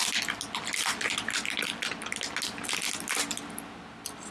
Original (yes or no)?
yes